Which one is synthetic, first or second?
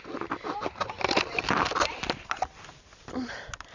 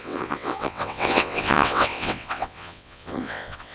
second